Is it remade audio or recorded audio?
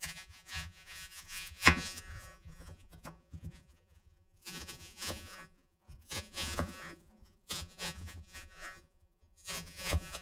remade